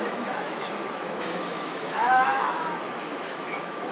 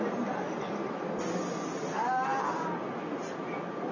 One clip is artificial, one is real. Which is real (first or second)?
second